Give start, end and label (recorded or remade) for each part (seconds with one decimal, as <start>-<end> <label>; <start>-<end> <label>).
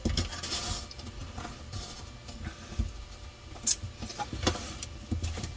0.0-5.6 recorded